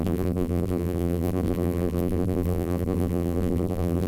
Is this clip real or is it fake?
fake